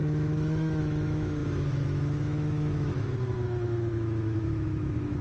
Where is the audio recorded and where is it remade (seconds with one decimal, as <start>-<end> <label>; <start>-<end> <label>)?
0.0-5.2 remade